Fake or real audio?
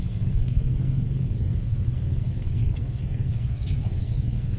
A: fake